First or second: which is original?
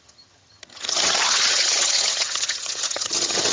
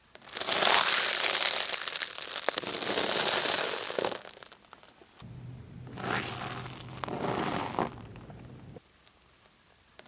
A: second